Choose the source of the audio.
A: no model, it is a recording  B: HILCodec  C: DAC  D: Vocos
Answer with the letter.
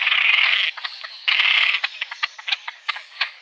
C